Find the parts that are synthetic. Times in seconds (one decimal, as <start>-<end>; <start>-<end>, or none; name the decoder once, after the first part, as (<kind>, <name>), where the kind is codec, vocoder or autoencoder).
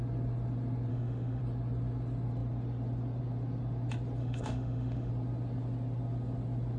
0.9-1.4 (autoencoder, DAC-VAE); 4.2-5.1